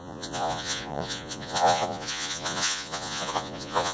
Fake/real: fake